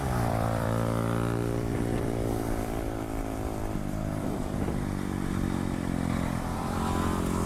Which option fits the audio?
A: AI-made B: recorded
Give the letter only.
A